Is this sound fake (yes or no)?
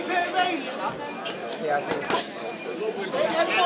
no